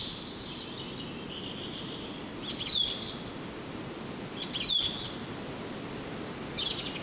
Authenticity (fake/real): real